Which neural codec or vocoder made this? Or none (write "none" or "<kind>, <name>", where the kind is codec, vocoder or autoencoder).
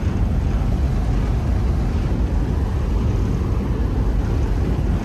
none